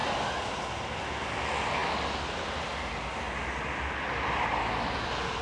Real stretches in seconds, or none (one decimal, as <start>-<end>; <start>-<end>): 0.0-5.4